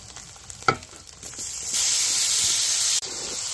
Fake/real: real